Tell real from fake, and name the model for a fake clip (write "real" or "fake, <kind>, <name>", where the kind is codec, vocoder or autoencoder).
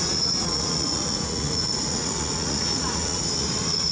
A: fake, vocoder, Vocos